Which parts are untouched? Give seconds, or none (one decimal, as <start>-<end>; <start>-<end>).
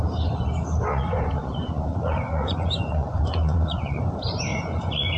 0.0-0.9; 4.0-4.5